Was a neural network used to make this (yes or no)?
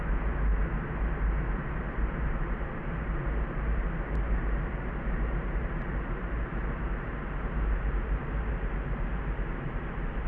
yes